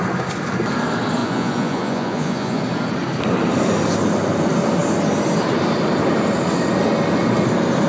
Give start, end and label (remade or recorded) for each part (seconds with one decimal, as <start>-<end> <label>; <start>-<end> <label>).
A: 0.0-1.2 recorded; 1.2-2.6 remade; 2.6-7.9 recorded